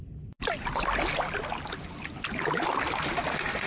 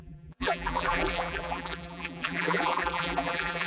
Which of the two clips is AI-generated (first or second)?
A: second